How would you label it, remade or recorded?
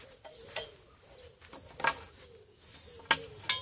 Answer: recorded